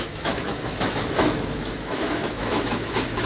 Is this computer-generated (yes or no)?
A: yes